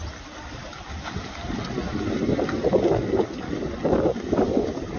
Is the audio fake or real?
real